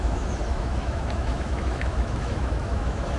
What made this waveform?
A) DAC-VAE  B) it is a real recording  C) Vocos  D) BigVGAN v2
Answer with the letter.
A